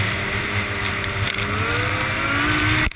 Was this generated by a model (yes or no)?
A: no